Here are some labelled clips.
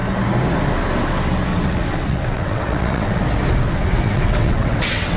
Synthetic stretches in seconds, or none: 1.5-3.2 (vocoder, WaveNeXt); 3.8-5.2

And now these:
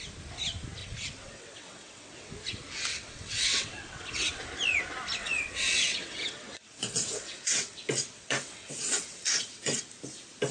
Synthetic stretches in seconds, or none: 0.8-2.3 (vocoder, WaveNeXt); 2.9-4.5; 5.2-9.8